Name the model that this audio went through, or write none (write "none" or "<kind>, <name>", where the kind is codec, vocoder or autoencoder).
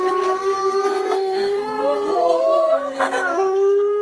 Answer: codec, SNAC